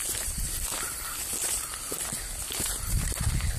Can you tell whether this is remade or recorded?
recorded